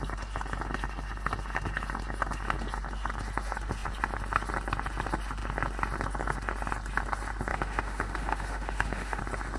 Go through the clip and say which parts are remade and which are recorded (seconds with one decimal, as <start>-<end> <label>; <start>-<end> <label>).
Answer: 0.0-7.5 recorded; 7.5-9.2 remade; 9.2-9.6 recorded